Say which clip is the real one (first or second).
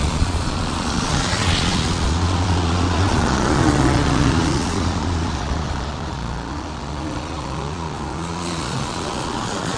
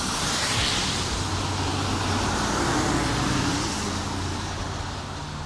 second